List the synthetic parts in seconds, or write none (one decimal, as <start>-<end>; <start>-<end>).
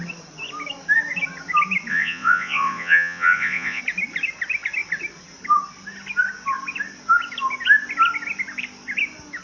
1.9-3.8